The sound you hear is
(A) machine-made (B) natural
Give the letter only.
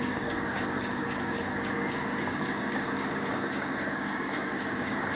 A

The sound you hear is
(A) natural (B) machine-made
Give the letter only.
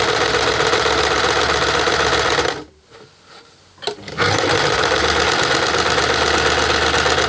A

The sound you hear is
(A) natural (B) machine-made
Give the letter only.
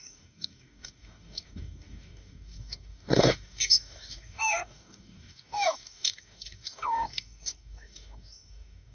B